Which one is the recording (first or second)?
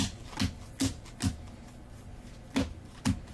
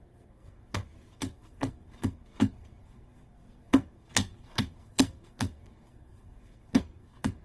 first